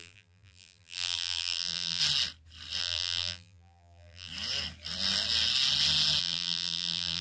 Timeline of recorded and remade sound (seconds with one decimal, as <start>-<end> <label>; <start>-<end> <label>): 0.0-2.0 remade; 2.0-2.8 recorded; 2.8-4.3 remade; 4.3-6.2 recorded; 6.2-7.2 remade